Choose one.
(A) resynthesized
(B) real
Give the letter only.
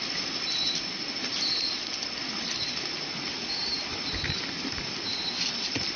B